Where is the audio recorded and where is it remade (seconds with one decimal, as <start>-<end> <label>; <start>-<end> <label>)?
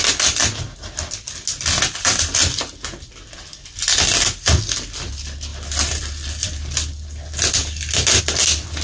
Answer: 0.0-8.8 recorded